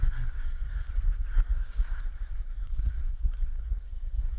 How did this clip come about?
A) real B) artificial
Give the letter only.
B